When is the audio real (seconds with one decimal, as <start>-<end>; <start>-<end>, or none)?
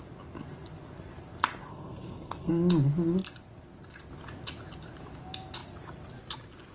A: 0.0-1.7; 2.5-6.7